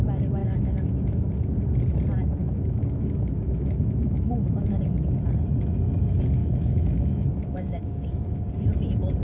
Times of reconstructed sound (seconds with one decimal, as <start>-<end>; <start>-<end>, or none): 0.4-1.3; 2.4-4.8; 6.4-8.5